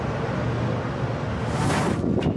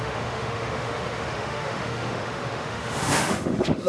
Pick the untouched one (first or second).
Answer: first